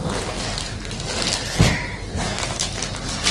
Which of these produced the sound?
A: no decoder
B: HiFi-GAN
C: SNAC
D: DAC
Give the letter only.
A